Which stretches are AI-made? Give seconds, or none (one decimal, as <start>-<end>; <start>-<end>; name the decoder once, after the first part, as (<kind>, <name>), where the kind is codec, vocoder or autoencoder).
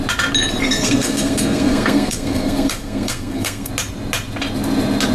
0.6-3.7 (codec, SNAC)